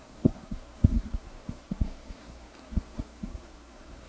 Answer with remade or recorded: remade